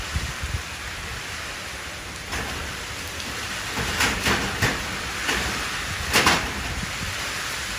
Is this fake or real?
fake